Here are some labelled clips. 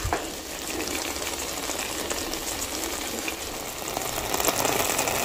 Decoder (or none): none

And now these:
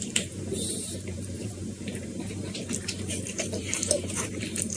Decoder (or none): vocoder, BigVGAN v2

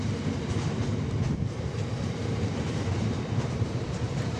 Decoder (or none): vocoder, BigVGAN v2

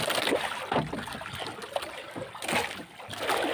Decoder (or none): none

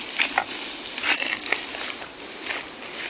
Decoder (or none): none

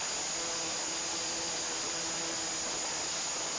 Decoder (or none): none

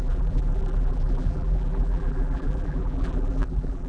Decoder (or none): vocoder, BigVGAN v2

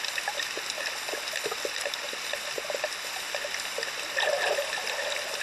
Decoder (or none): none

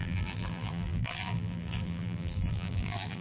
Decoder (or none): vocoder, BigVGAN v2